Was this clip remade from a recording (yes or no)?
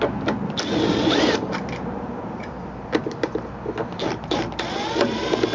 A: no